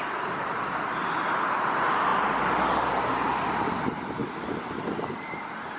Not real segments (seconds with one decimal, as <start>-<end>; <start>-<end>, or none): 2.1-3.0; 4.2-5.8